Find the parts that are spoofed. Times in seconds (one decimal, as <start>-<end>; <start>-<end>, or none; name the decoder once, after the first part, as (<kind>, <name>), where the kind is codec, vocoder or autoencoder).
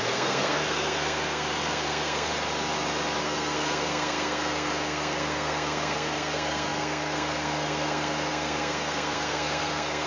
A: 0.0-2.3 (codec, SNAC); 3.2-10.1